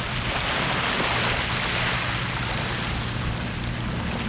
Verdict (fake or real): real